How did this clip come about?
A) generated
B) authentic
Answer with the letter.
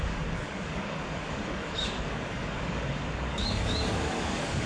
A